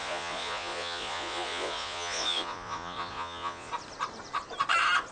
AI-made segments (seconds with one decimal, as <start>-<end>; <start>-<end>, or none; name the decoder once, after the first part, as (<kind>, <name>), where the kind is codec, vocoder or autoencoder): 0.0-3.7 (vocoder, Vocos)